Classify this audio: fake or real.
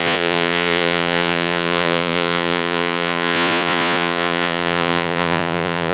fake